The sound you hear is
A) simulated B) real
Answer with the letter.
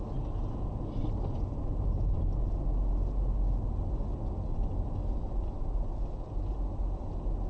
B